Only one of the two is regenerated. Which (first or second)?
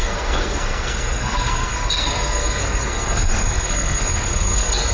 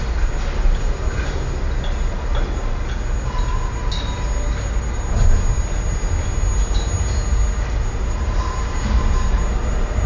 first